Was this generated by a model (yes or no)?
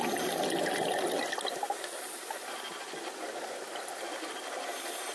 no